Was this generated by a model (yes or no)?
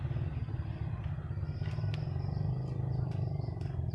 no